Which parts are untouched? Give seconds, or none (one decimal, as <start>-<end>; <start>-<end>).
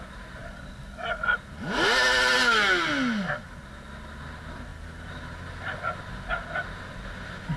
0.0-7.6